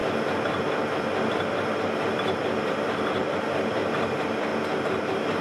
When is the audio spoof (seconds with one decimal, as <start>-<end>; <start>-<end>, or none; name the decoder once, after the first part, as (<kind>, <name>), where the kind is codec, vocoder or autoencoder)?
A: 1.3-4.5 (vocoder, BigVGAN v2); 5.0-5.4